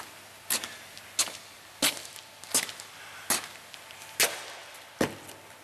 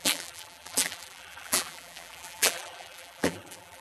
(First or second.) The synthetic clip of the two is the second